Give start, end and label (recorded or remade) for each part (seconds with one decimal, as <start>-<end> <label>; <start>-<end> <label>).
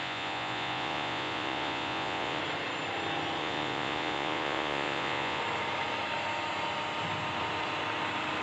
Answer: 0.0-2.4 remade; 2.4-3.4 recorded; 3.4-5.4 remade; 5.4-8.4 recorded